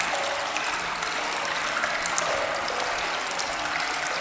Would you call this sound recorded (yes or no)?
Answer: yes